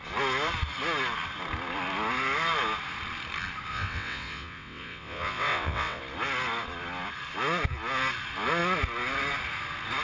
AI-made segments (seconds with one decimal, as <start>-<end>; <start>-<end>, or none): 3.7-6.0